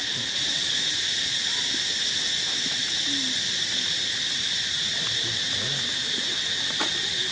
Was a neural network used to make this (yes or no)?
no